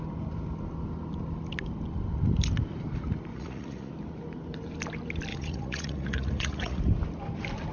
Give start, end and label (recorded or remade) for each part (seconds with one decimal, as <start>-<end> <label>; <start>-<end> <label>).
0.0-3.3 recorded; 3.3-3.9 remade; 3.9-5.3 recorded; 5.3-6.8 remade; 6.8-7.7 recorded